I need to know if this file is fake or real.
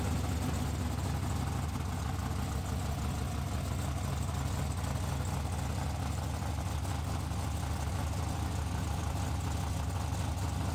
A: real